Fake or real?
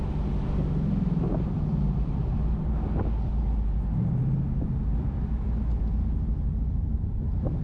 real